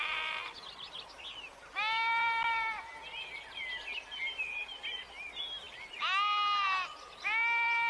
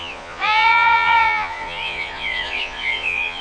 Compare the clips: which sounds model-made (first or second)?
second